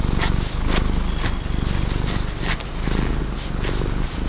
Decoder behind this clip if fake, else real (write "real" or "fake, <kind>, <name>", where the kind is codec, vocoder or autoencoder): real